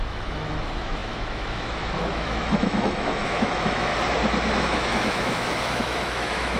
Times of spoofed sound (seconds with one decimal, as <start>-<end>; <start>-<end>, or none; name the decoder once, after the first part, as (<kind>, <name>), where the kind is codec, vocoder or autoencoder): 0.0-3.9 (autoencoder, DAC-VAE); 4.6-6.6